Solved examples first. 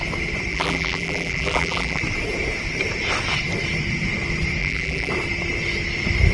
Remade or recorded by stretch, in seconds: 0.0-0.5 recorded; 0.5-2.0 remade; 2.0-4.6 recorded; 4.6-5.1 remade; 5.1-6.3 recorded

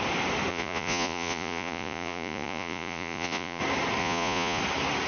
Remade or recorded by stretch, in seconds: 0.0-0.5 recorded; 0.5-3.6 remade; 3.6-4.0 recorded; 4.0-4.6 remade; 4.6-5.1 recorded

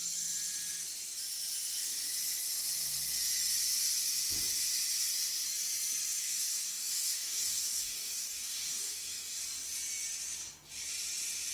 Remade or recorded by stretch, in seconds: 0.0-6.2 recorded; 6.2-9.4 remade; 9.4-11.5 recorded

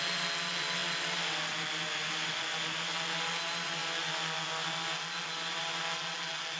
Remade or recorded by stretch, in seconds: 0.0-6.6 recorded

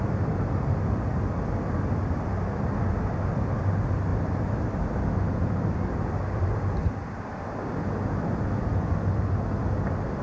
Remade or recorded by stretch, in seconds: 0.0-10.2 recorded

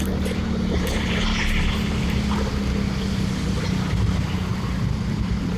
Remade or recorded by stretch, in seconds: 0.0-5.6 recorded